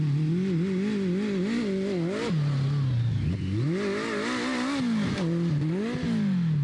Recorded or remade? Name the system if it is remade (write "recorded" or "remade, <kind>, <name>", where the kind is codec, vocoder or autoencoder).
recorded